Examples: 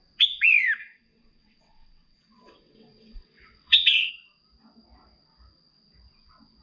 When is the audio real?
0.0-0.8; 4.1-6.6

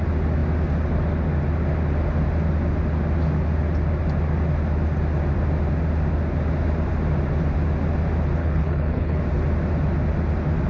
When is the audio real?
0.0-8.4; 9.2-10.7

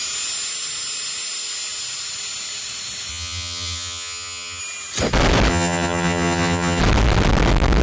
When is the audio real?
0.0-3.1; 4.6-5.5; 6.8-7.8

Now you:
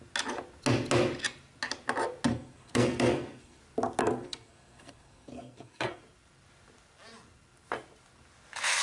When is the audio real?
0.0-2.3; 3.6-4.0; 6.0-8.8

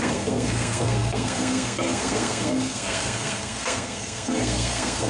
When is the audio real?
none

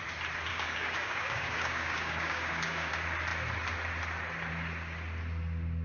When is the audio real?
0.0-0.5; 2.9-5.8

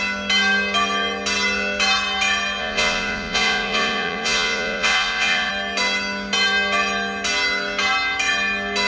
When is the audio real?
0.0-2.6; 5.5-8.9

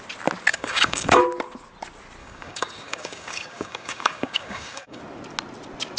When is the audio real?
0.0-0.5; 1.2-2.2; 5.0-6.0